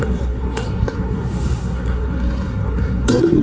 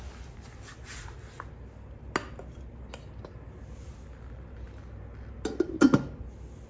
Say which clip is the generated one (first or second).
first